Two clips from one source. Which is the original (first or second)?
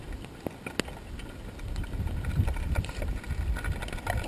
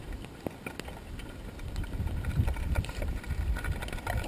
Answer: first